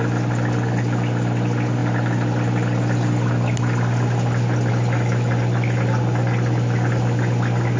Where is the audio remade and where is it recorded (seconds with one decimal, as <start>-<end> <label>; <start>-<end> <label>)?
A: 0.0-7.8 recorded